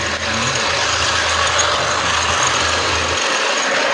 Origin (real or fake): real